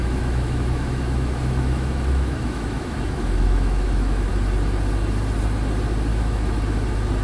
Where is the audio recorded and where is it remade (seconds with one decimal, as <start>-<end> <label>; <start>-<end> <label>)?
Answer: 0.0-4.3 remade; 4.3-6.1 recorded; 6.1-6.6 remade; 6.6-7.2 recorded